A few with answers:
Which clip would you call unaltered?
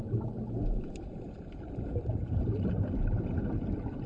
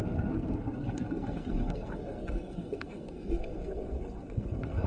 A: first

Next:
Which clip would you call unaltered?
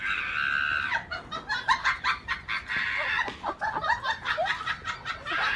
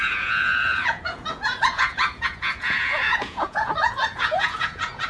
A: first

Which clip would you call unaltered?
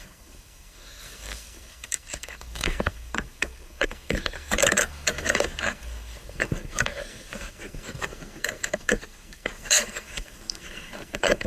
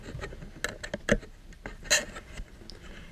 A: second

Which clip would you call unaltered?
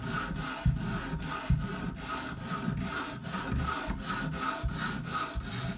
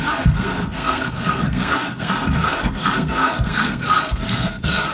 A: first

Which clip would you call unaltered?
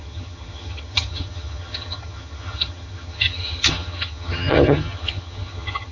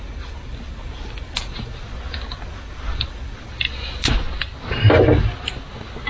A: second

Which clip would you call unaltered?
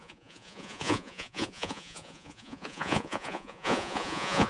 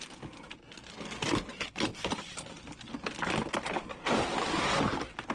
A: second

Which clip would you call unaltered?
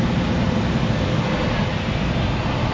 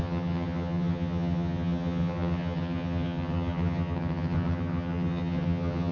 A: first